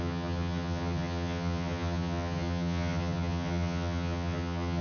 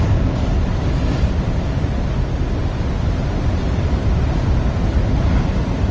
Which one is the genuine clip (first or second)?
second